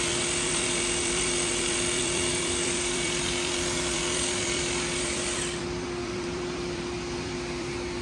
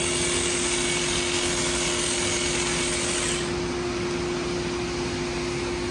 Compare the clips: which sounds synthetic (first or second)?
first